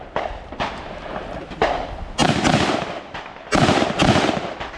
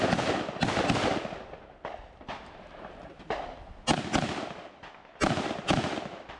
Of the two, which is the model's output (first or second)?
first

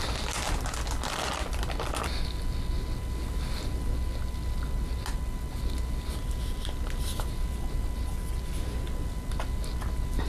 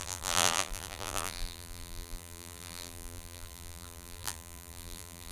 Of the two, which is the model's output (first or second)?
second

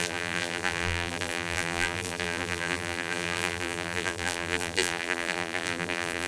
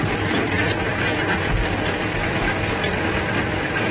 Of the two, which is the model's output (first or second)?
first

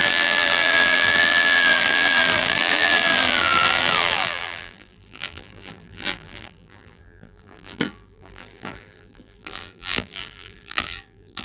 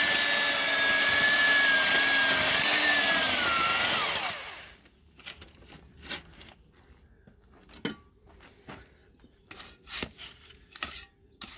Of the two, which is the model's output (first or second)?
first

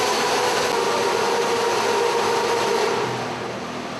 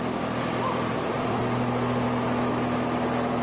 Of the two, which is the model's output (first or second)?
second